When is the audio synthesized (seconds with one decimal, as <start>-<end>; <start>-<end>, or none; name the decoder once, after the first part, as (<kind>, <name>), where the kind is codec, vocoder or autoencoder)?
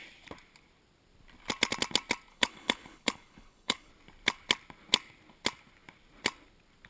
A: 2.3-3.9 (codec, HILCodec)